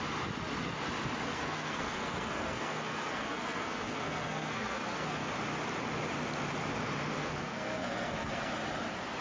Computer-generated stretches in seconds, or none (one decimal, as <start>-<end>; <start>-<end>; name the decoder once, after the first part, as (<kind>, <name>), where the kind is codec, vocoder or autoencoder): 1.3-5.3 (codec, SNAC); 7.1-8.5